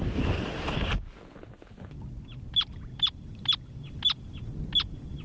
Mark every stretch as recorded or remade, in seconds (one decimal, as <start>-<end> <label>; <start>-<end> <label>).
0.0-2.9 recorded; 2.9-4.3 remade; 4.3-5.2 recorded